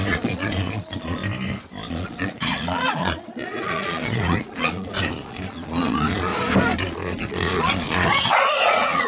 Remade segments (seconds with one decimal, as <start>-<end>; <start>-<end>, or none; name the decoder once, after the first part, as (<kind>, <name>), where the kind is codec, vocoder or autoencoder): 0.0-1.2 (vocoder, Vocos); 1.9-6.3; 6.8-9.1

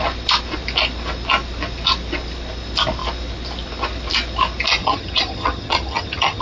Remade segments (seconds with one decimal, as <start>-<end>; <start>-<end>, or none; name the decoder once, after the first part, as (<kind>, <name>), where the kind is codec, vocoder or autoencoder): 4.8-6.4 (vocoder, HiFi-GAN)

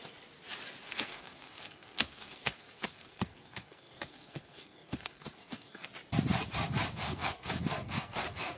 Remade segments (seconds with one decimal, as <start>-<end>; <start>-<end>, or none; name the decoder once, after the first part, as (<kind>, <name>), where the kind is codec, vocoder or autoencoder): 0.8-5.9 (codec, SNAC); 7.0-8.6

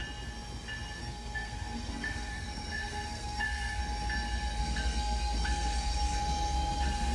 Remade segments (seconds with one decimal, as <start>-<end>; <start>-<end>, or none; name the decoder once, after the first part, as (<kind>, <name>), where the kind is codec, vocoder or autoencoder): 1.0-3.8 (codec, SNAC); 4.6-7.1

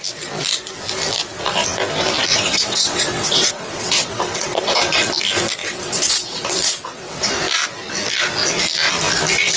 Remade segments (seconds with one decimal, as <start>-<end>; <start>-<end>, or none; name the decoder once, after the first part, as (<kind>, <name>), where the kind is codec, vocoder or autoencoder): 2.3-5.0 (vocoder, WaveNeXt); 5.6-7.3

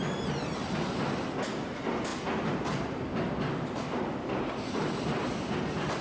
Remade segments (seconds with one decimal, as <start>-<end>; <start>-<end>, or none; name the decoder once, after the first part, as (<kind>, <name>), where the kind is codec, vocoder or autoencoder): none

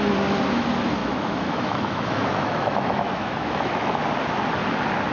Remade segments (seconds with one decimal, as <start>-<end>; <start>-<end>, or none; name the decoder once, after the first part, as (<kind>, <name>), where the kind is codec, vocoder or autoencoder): 1.0-4.0 (autoencoder, DAC-VAE)

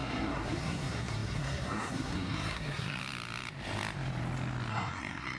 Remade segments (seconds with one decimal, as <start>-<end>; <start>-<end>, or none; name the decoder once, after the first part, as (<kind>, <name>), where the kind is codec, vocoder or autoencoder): 0.0-3.0 (codec, SNAC); 4.7-5.4